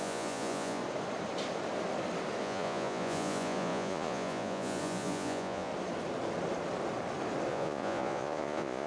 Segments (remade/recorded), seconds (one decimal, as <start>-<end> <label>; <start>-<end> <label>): 0.0-0.8 remade; 0.8-2.4 recorded; 2.4-5.7 remade; 5.7-7.5 recorded; 7.5-8.9 remade